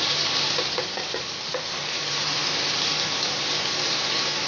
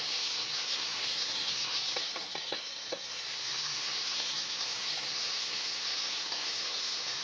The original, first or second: first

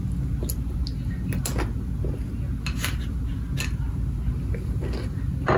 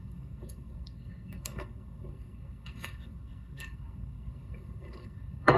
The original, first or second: first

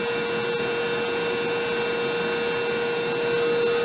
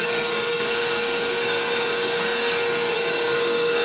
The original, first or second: first